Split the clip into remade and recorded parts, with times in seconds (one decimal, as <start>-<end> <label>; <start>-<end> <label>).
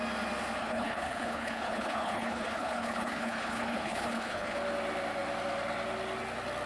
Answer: 0.0-0.6 recorded; 0.6-4.6 remade; 4.6-6.7 recorded